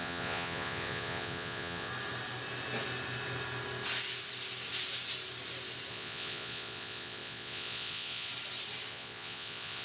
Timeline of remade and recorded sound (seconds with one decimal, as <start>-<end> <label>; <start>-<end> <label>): 0.0-1.9 remade; 1.9-5.9 recorded; 5.9-8.3 remade; 8.3-8.9 recorded; 8.9-9.8 remade